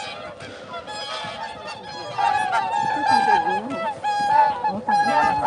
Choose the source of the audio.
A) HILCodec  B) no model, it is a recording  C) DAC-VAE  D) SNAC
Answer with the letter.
B